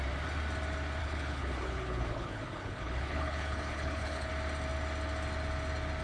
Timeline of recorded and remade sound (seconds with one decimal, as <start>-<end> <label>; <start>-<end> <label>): 0.0-1.0 recorded; 1.0-4.3 remade; 4.3-6.0 recorded